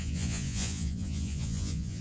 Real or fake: fake